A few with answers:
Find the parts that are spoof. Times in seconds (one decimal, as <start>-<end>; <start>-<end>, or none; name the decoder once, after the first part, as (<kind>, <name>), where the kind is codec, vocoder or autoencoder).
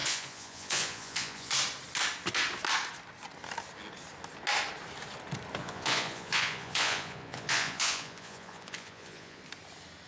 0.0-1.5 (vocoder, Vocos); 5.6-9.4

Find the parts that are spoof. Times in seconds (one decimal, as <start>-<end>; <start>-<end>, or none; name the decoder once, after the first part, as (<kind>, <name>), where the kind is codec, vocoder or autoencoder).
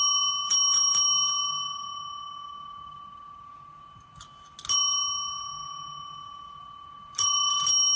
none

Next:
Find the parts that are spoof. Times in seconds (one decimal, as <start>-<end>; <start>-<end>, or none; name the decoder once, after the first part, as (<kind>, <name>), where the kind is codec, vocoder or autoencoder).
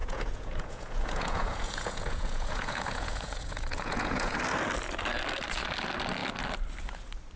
0.0-4.4 (vocoder, Vocos)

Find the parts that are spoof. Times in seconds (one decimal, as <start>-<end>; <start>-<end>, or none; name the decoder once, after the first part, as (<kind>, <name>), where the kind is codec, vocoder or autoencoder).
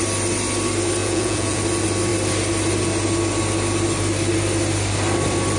1.0-1.6 (vocoder, Vocos)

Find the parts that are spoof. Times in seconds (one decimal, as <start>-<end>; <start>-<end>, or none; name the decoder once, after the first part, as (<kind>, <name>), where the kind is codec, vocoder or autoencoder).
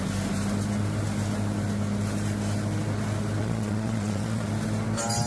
3.4-4.5 (vocoder, Vocos)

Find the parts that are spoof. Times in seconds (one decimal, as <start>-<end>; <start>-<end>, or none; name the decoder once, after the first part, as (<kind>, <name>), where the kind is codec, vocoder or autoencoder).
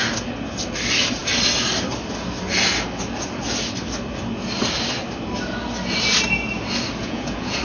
7.0-7.6 (vocoder, Vocos)